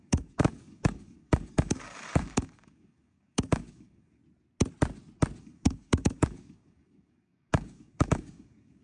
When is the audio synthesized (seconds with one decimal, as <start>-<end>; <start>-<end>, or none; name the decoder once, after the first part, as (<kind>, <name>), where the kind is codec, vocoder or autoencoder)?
0.0-4.2 (codec, DAC); 5.4-8.8